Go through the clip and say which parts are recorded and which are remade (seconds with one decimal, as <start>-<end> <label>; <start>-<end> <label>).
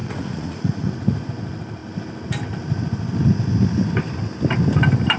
0.0-0.9 remade; 0.9-5.2 recorded